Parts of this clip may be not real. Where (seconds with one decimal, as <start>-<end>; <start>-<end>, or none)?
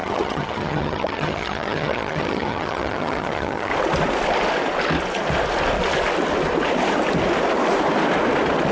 0.0-3.7